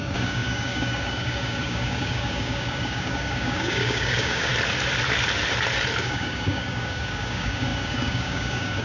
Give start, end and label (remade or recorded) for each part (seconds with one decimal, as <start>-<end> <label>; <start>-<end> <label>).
0.0-4.5 remade; 4.5-6.0 recorded; 6.0-8.8 remade